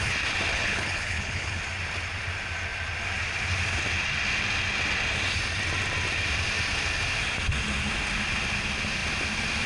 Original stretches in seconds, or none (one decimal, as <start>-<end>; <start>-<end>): 0.0-0.5; 1.6-9.7